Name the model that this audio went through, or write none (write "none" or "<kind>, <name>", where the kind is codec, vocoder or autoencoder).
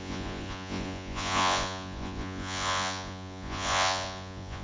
vocoder, Vocos